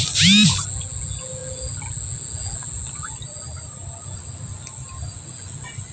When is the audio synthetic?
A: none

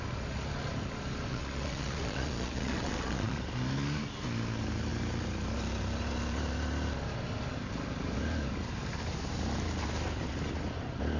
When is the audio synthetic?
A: 1.3-3.4 (vocoder, Vocos)

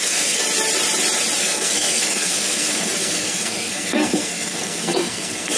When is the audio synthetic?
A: 0.0-0.4 (codec, SNAC); 1.4-5.6

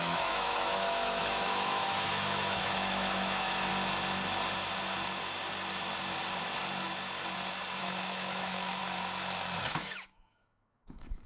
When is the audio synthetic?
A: 0.0-3.7 (autoencoder, DAC-VAE); 7.8-8.8; 9.6-11.3

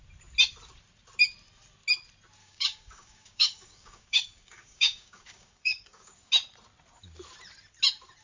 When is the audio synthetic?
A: 2.4-6.3 (codec, DAC)

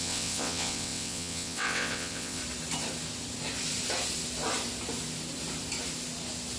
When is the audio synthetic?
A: 0.0-2.4 (vocoder, WaveNeXt)